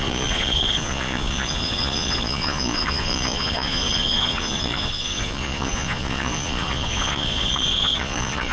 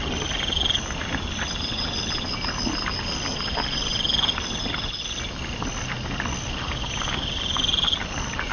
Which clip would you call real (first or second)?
second